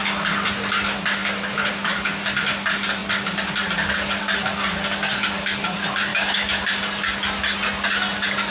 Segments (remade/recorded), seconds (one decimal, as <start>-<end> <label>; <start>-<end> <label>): 0.0-6.1 recorded; 6.1-6.6 remade; 6.6-8.5 recorded